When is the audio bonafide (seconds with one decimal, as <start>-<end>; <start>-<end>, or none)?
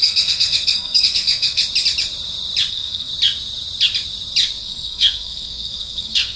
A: 1.6-2.7; 3.1-4.6